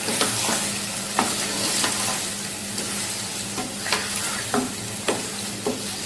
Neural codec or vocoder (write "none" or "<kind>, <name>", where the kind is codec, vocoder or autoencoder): none